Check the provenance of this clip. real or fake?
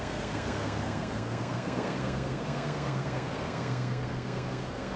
fake